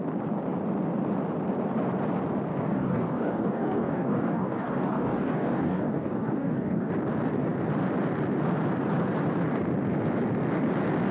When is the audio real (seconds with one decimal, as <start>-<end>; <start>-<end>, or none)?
0.0-2.5; 6.9-11.1